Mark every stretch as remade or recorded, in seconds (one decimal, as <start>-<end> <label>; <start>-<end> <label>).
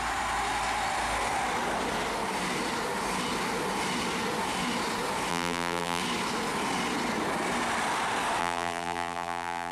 0.0-5.3 recorded; 5.3-6.0 remade; 6.0-8.4 recorded; 8.4-9.7 remade